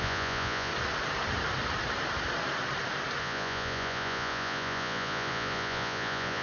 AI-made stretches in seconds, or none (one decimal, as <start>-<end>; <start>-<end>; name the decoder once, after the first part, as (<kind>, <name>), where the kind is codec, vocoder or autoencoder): 0.0-0.7 (vocoder, Vocos); 3.2-6.4